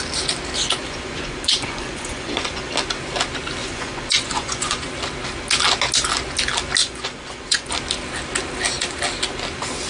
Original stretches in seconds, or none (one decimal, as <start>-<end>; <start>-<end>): 0.0-0.8; 2.7-3.6; 4.9-6.8; 7.7-9.9